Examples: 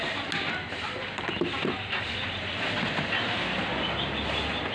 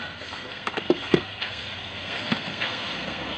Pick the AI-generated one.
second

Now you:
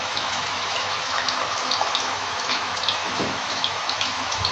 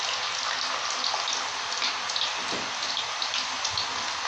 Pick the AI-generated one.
first